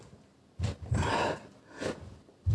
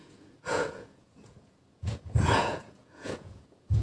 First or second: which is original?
first